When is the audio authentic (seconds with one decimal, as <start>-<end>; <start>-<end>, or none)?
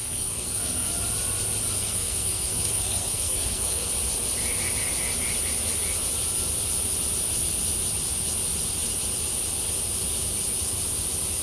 0.9-1.8; 3.9-11.4